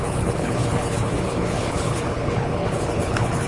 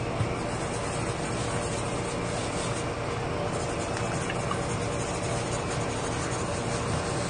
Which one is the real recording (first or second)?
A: second